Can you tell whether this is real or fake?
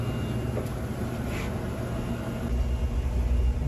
real